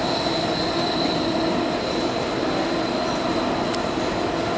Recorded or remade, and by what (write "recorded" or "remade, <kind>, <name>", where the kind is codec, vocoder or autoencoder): recorded